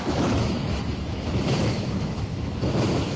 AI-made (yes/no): yes